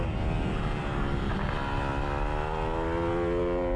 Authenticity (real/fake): real